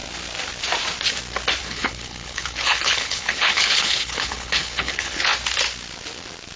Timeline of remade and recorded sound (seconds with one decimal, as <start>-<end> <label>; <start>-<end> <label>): 0.0-1.6 recorded; 1.6-5.3 remade; 5.3-6.6 recorded